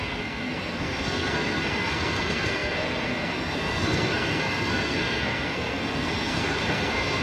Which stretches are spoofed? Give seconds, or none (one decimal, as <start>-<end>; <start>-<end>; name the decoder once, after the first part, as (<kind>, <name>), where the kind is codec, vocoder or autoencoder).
0.0-7.2 (codec, SNAC)